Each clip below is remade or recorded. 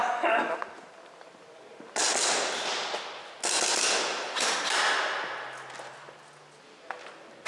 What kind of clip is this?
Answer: recorded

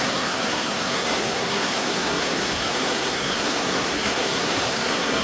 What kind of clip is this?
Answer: remade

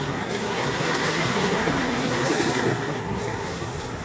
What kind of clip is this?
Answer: remade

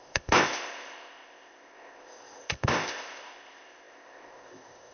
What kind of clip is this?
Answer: remade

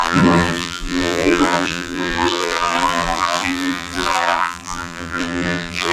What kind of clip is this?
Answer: remade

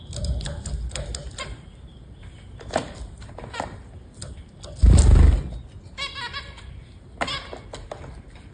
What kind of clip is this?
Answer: recorded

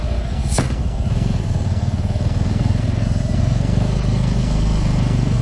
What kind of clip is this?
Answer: remade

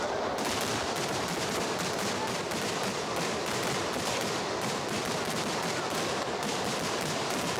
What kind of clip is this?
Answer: remade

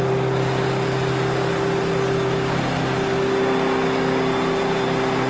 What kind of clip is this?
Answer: recorded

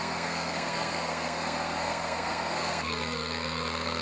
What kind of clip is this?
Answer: remade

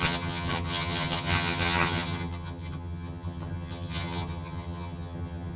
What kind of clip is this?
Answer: remade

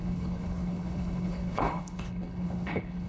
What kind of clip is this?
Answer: remade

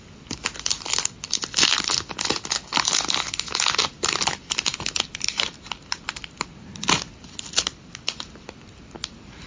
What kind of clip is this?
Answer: recorded